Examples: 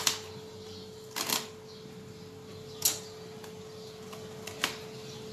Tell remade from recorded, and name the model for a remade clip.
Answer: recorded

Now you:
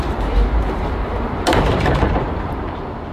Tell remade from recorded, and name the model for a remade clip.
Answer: remade, vocoder, BigVGAN v2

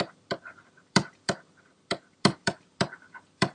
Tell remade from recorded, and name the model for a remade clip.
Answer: remade, vocoder, BigVGAN v2